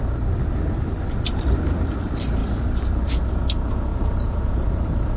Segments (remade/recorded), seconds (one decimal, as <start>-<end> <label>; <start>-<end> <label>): 0.0-3.9 recorded; 3.9-5.2 remade